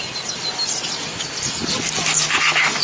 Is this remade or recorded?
recorded